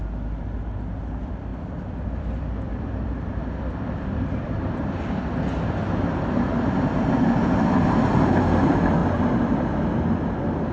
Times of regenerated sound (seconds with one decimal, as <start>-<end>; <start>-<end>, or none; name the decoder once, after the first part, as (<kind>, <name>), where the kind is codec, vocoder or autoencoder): 1.5-5.2 (vocoder, BigVGAN v2)